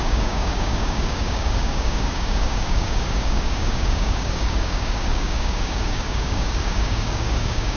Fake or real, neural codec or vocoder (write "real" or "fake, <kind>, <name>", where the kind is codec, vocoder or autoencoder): fake, codec, DAC